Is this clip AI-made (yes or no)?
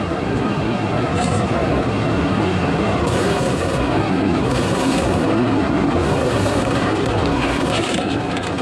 yes